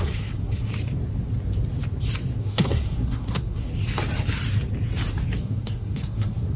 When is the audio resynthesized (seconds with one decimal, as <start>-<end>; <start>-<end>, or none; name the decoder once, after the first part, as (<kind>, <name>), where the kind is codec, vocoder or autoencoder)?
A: 0.0-0.7 (codec, SNAC); 2.4-3.7; 5.4-6.6